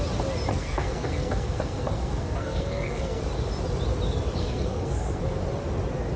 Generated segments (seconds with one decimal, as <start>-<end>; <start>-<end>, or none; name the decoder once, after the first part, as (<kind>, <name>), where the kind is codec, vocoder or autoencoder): 0.5-3.2 (codec, SNAC); 4.4-5.2